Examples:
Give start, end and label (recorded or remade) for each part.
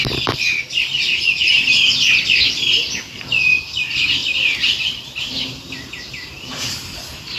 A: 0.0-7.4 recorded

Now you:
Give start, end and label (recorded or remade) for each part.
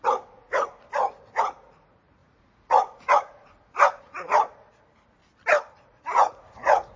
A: 0.0-5.2 remade; 5.2-5.8 recorded; 5.8-7.0 remade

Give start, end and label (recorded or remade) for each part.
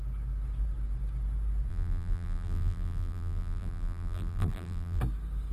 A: 0.0-1.7 recorded; 1.7-5.0 remade; 5.0-5.5 recorded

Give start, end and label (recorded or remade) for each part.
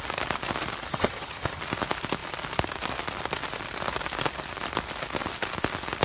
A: 0.0-0.9 recorded; 0.9-1.6 remade; 1.6-6.0 recorded